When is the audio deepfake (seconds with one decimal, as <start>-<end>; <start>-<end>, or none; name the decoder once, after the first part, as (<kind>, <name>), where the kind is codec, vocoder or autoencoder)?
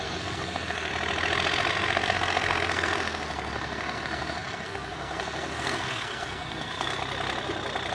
0.0-0.9 (codec, SNAC); 1.7-7.0